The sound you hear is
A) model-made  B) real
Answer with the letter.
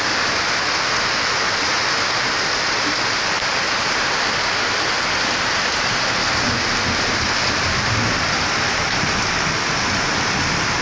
B